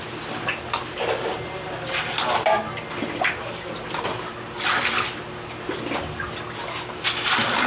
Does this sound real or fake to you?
real